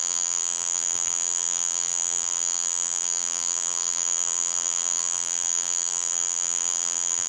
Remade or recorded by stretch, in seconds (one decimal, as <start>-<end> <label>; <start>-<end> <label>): 0.0-7.3 remade